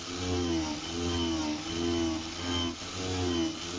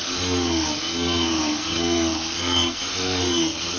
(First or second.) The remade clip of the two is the second